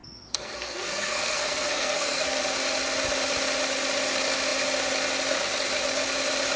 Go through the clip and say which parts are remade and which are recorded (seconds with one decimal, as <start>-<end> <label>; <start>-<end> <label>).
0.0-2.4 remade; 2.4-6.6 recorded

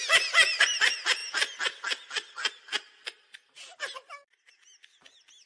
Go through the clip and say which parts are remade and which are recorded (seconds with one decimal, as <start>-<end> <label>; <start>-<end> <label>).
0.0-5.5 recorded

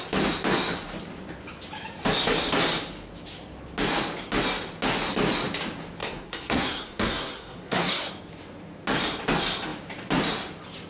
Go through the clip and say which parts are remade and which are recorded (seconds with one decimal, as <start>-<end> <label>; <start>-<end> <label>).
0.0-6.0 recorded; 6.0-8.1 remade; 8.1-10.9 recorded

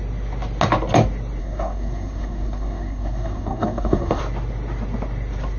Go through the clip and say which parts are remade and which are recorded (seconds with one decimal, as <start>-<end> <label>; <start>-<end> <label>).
0.0-1.4 recorded; 1.4-4.2 remade; 4.2-5.6 recorded

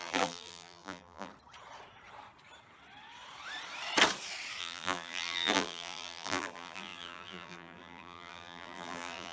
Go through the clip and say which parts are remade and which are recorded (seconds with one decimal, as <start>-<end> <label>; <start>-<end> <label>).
0.0-1.3 remade; 1.3-4.6 recorded; 4.6-9.3 remade